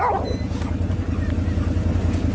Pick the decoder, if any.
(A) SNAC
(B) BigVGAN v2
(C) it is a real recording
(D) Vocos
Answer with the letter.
C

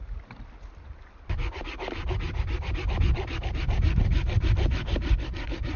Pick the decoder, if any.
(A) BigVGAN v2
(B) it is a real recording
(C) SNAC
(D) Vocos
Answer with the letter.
B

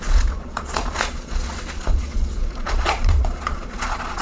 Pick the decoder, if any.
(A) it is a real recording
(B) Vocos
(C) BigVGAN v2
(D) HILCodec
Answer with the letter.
B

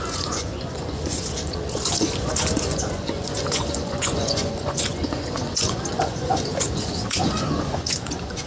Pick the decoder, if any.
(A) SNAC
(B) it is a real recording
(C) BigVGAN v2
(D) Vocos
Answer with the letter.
D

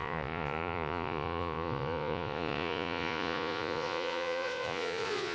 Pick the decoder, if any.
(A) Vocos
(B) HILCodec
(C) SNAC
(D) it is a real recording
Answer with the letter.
A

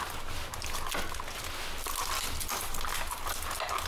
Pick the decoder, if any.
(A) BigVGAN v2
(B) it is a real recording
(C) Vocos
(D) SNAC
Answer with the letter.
B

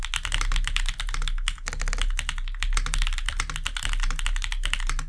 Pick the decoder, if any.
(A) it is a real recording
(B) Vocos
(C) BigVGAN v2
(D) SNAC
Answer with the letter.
A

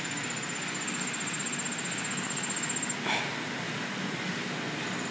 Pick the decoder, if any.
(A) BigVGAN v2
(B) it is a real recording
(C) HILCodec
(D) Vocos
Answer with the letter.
B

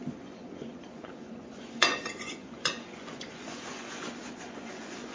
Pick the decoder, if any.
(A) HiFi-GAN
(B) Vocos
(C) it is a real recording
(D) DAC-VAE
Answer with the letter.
B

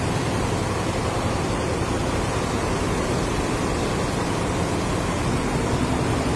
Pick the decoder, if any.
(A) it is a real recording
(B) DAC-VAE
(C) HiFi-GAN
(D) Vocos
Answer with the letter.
A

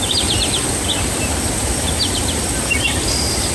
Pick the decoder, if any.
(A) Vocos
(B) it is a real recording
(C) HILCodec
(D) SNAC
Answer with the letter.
B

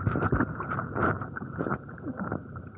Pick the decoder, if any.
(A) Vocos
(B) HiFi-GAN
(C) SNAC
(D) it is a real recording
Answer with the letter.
D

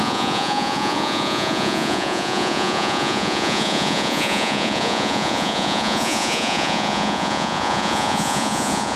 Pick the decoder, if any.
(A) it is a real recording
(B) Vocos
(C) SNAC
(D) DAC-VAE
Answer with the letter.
B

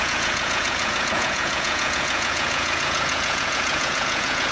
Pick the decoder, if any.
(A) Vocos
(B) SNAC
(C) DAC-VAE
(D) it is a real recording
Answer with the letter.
A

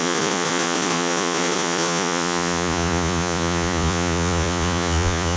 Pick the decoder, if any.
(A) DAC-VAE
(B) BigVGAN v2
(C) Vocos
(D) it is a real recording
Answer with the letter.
C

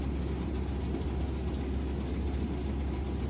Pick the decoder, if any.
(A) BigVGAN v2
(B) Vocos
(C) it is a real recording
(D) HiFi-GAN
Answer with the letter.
C